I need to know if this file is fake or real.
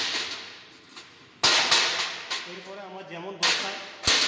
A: real